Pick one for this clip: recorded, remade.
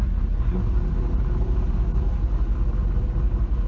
recorded